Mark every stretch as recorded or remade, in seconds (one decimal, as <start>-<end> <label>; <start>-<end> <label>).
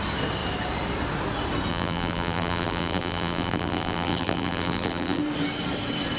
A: 0.0-1.7 recorded; 1.7-5.2 remade; 5.2-6.2 recorded